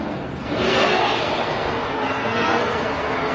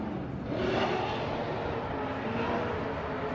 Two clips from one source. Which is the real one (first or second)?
second